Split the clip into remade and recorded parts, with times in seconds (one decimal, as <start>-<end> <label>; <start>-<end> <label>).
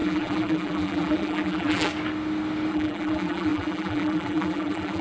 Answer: 0.0-1.9 remade; 1.9-2.7 recorded; 2.7-5.0 remade